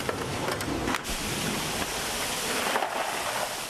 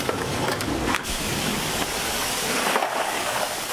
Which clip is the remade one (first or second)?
second